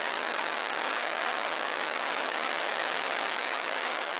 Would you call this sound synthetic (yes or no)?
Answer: yes